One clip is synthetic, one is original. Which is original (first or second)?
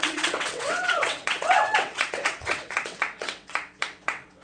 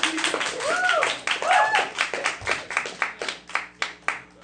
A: second